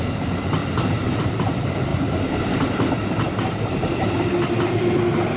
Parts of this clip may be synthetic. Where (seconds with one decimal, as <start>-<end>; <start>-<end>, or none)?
0.6-1.2; 1.9-4.3